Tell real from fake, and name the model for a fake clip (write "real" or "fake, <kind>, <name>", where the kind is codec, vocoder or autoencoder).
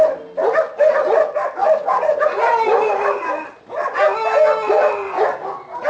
real